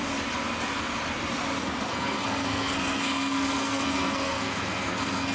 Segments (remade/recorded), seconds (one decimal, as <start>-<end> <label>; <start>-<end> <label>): 0.0-1.9 recorded; 1.9-5.3 remade